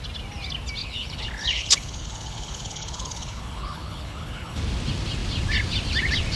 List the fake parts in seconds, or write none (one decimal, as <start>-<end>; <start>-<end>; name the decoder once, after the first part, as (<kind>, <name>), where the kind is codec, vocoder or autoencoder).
0.8-4.6 (codec, HILCodec)